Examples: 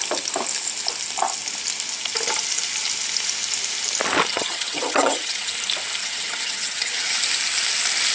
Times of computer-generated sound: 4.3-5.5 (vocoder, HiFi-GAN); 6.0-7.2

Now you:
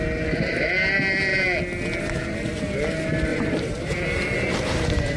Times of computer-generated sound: 3.3-5.2 (vocoder, BigVGAN v2)

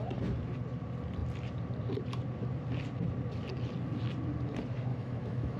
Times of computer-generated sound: 4.9-5.6 (autoencoder, DAC-VAE)

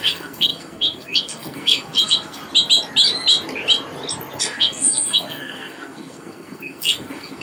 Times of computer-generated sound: 0.0-2.4 (codec, SNAC); 4.4-7.4

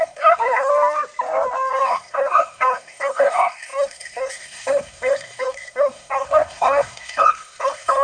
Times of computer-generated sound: 0.0-0.7 (codec, SNAC); 1.7-8.0